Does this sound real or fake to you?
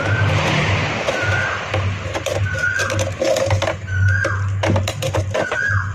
real